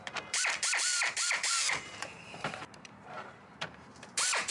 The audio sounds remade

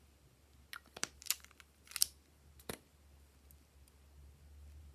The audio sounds recorded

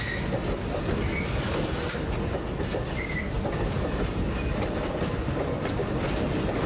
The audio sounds recorded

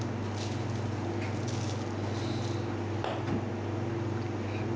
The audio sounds recorded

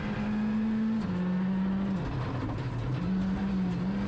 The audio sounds recorded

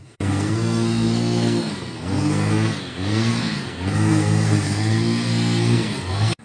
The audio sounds remade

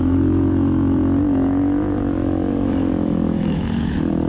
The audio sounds remade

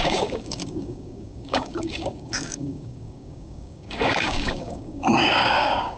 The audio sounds remade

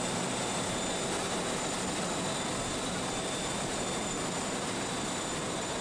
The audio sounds recorded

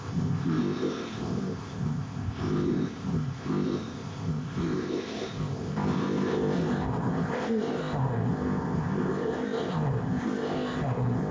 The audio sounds remade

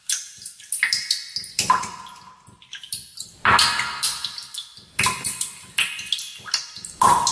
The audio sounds recorded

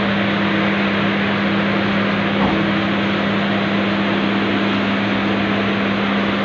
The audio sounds recorded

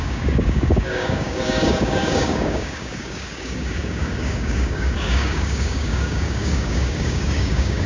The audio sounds remade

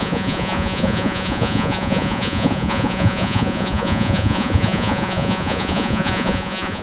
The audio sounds remade